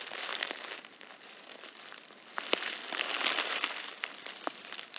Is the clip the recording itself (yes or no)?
yes